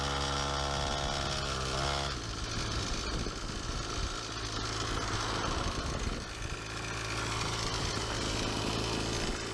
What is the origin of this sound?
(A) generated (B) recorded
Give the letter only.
B